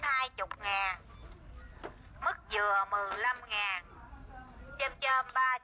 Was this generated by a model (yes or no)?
no